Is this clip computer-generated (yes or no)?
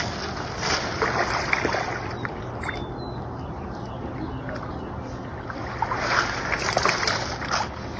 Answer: no